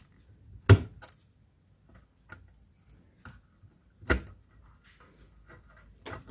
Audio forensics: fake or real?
real